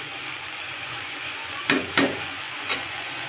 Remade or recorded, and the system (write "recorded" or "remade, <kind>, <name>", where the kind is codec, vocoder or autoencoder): remade, vocoder, Vocos